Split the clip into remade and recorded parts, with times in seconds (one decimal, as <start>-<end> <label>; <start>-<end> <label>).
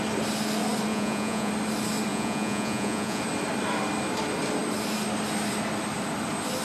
0.0-0.9 recorded; 0.9-1.5 remade; 1.5-2.1 recorded; 2.1-3.2 remade; 3.2-6.6 recorded